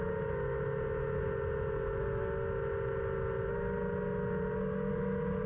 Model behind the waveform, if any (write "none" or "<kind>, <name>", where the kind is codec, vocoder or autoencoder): none